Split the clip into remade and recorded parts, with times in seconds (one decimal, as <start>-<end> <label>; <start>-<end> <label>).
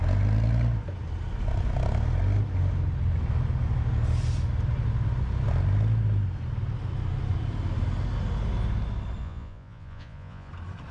0.0-9.2 recorded; 9.2-10.5 remade; 10.5-10.9 recorded